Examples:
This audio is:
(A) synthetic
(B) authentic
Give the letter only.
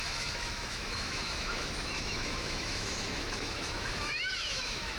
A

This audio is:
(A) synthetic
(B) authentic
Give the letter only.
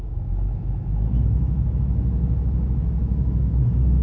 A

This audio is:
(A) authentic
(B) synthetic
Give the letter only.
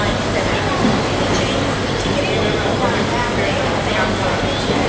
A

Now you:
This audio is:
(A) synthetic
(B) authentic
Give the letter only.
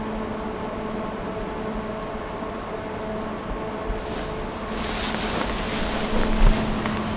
B